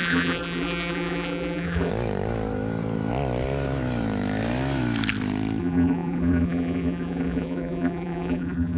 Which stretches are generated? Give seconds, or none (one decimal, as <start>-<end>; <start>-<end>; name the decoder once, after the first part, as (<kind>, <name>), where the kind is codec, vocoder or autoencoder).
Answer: 0.0-1.9 (vocoder, BigVGAN v2); 5.6-8.8